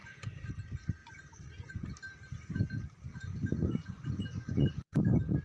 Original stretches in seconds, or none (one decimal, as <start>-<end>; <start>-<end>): 0.5-1.0; 1.7-3.1; 5.0-5.4